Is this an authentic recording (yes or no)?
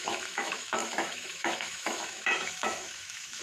no